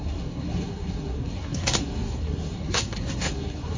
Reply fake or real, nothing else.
fake